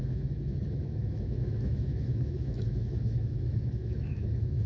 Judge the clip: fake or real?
fake